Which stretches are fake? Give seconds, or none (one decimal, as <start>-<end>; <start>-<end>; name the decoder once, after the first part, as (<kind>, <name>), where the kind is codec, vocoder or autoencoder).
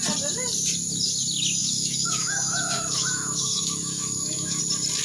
1.6-4.6 (autoencoder, DAC-VAE)